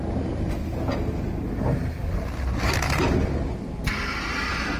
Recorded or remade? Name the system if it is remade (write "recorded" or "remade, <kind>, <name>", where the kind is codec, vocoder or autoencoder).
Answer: recorded